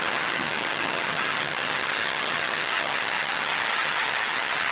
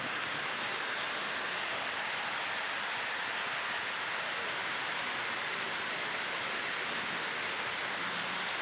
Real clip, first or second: second